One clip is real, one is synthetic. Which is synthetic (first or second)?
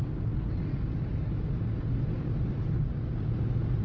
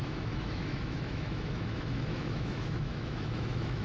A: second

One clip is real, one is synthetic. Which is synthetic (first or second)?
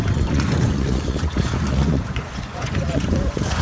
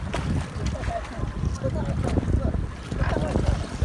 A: first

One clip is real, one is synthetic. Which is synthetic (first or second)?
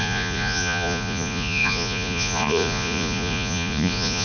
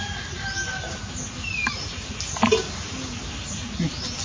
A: first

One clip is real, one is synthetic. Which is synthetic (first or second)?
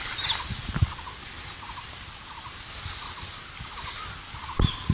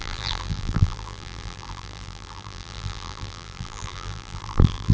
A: second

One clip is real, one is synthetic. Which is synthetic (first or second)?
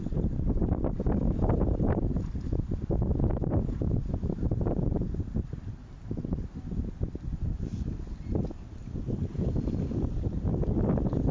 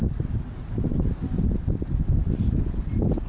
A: first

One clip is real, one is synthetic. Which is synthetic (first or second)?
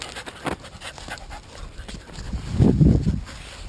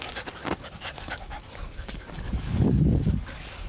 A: second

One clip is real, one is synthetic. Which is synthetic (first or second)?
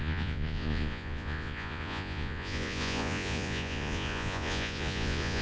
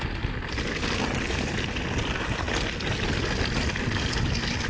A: first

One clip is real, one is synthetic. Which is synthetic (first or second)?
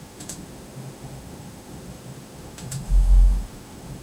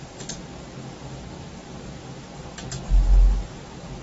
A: first